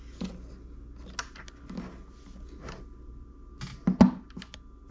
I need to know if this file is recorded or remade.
recorded